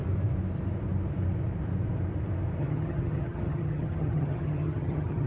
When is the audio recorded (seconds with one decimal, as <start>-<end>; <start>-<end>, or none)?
0.0-2.6